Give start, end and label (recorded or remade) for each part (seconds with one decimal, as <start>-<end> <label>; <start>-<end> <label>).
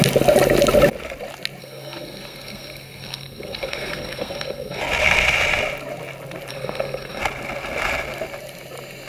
0.0-1.6 recorded; 1.6-4.8 remade; 4.8-6.5 recorded; 6.5-7.2 remade; 7.2-9.1 recorded